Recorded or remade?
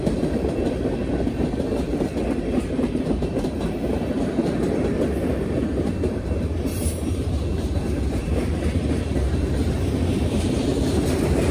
remade